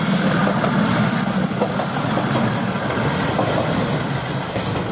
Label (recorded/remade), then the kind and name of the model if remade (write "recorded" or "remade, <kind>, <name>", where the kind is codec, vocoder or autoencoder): recorded